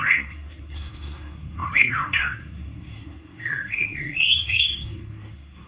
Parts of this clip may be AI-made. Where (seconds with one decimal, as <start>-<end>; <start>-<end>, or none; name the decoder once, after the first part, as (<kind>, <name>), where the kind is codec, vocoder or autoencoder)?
0.0-5.7 (codec, SNAC)